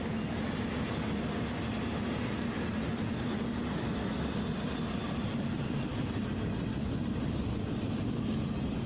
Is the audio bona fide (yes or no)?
yes